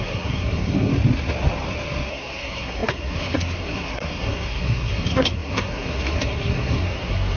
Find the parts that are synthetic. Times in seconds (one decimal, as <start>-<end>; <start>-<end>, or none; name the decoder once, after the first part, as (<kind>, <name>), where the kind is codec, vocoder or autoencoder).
0.0-0.9 (codec, SNAC); 2.1-7.4